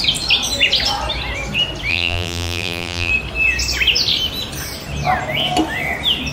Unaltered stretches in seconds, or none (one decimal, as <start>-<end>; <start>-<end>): 0.0-1.9; 3.1-6.3